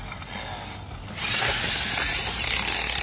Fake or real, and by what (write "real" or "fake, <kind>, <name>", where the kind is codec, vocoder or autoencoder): real